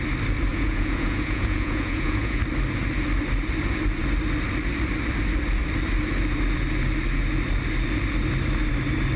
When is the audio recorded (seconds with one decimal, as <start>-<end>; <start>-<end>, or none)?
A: 0.0-0.5; 2.4-9.2